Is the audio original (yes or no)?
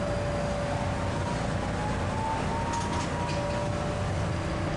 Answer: yes